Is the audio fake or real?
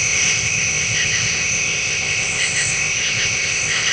fake